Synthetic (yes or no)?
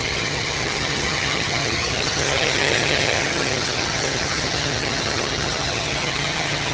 yes